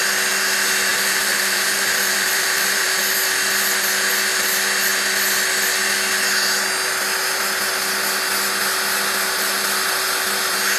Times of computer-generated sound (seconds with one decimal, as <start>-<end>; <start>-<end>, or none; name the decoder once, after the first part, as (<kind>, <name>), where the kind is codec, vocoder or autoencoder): 0.9-3.0 (vocoder, BigVGAN v2)